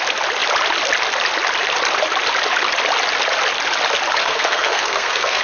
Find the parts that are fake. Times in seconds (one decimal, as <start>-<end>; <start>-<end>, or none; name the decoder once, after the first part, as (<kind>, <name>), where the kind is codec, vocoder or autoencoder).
4.2-5.4 (codec, SNAC)